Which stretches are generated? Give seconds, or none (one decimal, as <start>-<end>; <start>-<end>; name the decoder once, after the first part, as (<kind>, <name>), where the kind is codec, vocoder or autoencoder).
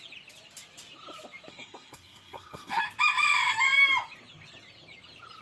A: 1.5-2.8 (codec, SNAC)